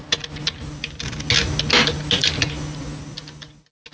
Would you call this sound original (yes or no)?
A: yes